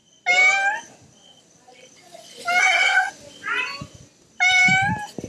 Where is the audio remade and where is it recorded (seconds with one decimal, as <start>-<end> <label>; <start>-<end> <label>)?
0.0-2.6 recorded; 2.6-3.1 remade; 3.1-5.3 recorded